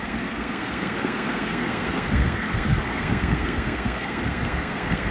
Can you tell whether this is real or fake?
fake